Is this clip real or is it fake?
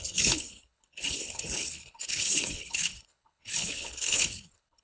fake